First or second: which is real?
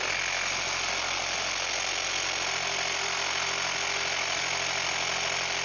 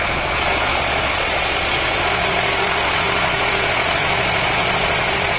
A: first